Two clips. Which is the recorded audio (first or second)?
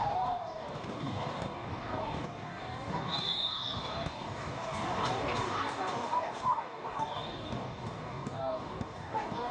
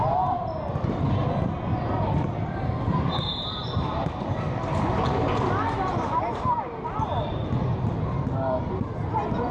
second